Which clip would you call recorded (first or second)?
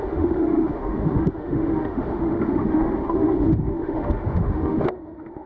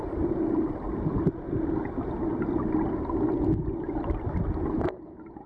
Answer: second